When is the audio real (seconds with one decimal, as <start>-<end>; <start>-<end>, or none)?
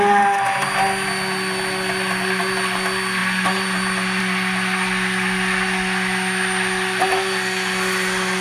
0.0-8.4